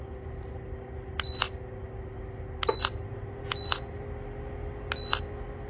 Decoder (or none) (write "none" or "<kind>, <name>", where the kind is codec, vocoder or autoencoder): none